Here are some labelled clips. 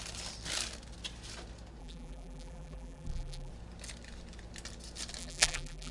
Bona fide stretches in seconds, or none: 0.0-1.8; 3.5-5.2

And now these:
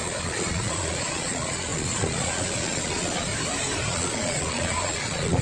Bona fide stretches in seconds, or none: 3.3-3.9